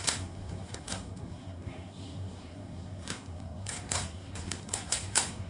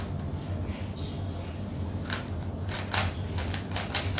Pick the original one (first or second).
second